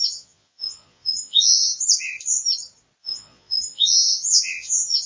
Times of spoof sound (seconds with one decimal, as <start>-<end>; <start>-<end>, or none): 0.0-1.7; 3.0-5.1

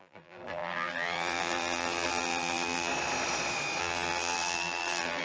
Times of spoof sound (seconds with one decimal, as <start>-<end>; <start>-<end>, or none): 0.0-2.9; 3.8-5.2

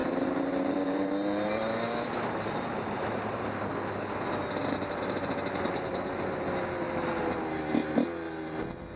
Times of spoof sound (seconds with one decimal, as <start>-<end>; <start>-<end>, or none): 0.0-3.7

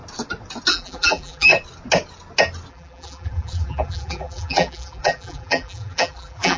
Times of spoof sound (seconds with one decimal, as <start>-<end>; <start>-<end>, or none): 0.7-1.5; 2.7-6.6

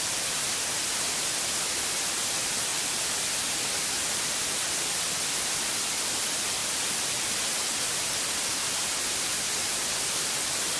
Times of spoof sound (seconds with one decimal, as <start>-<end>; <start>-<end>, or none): none

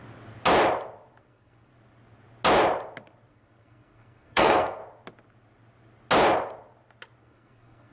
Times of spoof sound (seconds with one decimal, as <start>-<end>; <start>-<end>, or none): 1.2-1.7; 3.3-4.8; 7.2-7.9

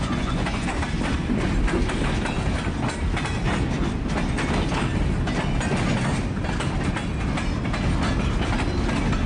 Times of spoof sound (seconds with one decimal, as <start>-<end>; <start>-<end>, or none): 0.0-0.7

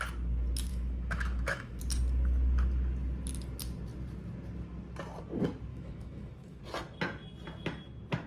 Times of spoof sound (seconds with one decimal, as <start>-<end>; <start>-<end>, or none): 0.7-1.8; 5.7-6.6